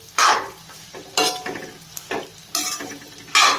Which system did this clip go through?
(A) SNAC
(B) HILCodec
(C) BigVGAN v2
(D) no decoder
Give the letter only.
D